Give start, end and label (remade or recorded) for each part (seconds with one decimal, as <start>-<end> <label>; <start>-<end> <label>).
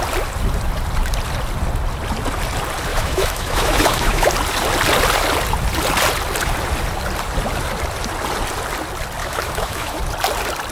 0.0-2.9 recorded; 2.9-4.3 remade; 4.3-9.2 recorded; 9.2-10.0 remade; 10.0-10.7 recorded